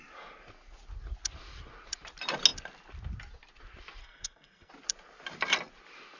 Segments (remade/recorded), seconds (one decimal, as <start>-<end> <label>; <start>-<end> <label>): 0.0-4.0 recorded; 4.0-4.7 remade; 4.7-6.2 recorded